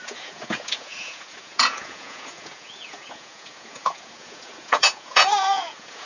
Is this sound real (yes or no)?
no